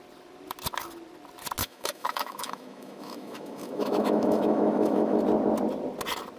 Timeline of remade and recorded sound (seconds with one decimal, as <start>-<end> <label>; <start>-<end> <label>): 0.0-1.6 recorded; 1.6-5.2 remade; 5.2-6.4 recorded